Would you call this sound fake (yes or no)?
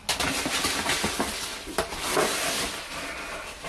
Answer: no